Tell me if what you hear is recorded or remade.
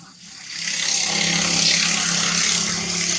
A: recorded